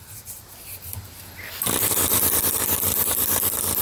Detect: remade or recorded recorded